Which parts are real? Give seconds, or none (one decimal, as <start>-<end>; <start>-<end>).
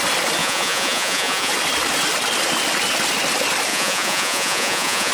0.0-0.4; 1.5-3.7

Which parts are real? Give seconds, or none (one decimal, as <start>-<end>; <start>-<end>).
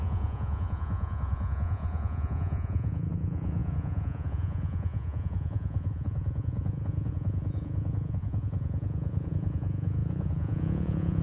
none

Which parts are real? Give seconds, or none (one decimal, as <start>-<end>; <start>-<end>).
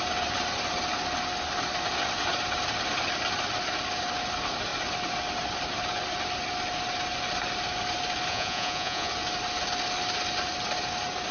0.0-8.3; 9.1-11.3